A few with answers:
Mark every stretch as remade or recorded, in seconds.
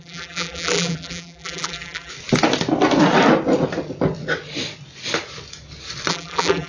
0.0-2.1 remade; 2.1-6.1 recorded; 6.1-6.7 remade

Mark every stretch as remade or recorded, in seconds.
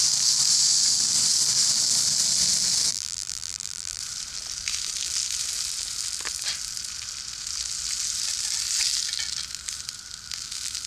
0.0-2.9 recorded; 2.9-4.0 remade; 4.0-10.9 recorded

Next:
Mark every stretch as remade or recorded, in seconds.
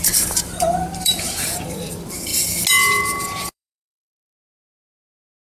0.0-2.3 remade; 2.3-3.0 recorded; 3.0-5.4 remade